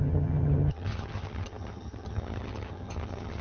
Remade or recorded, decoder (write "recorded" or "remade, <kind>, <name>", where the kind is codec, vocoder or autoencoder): remade, vocoder, HiFi-GAN